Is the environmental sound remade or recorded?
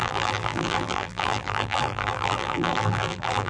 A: remade